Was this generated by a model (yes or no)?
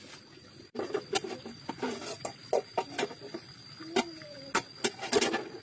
no